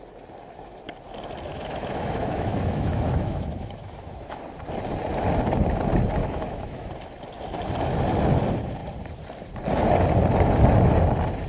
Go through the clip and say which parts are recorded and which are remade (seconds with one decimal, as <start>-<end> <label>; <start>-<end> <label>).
0.0-1.5 recorded; 1.5-4.4 remade; 4.4-6.2 recorded; 6.2-6.9 remade; 6.9-11.5 recorded